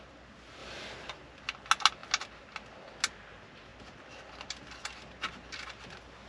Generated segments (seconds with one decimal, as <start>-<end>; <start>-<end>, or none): none